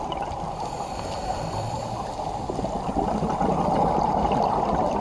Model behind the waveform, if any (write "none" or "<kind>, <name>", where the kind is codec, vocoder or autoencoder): none